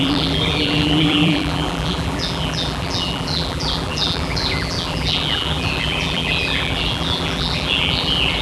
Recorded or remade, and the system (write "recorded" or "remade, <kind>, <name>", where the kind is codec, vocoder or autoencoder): remade, vocoder, BigVGAN v2